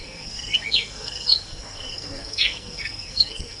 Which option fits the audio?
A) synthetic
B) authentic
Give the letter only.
A